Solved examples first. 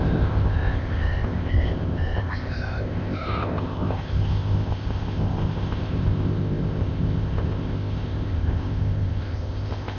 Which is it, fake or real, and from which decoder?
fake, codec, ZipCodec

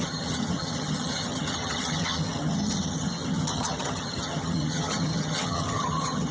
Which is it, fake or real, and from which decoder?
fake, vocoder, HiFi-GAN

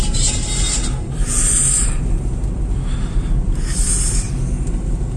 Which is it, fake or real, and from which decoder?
real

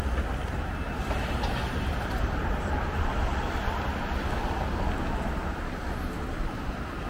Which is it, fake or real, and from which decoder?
real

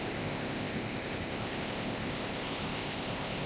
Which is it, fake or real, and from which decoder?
fake, codec, ZipCodec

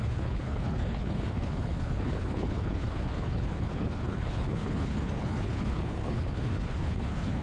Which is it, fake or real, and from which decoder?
fake, codec, HILCodec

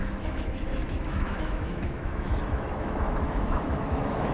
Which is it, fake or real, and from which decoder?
fake, autoencoder, DAC-VAE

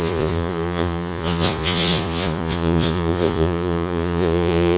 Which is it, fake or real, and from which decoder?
fake, vocoder, Vocos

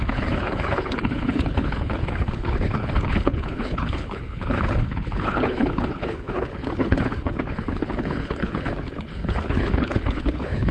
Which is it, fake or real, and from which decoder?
fake, codec, HILCodec